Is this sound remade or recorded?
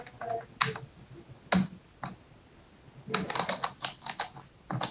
recorded